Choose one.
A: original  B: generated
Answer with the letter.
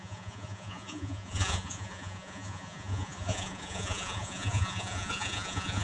B